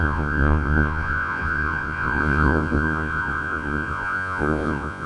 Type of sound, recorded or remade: remade